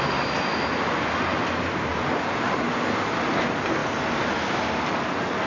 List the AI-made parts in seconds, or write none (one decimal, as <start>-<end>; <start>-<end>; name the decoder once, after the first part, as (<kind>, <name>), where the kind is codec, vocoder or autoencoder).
none